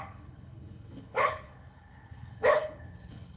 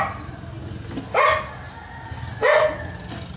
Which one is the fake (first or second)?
first